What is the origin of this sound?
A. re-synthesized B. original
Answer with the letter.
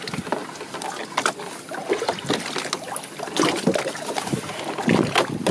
B